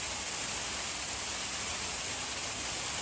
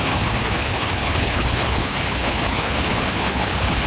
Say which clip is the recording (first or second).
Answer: first